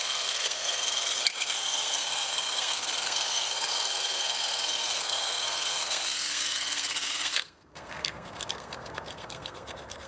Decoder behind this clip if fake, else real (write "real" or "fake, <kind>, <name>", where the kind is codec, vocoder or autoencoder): fake, codec, SNAC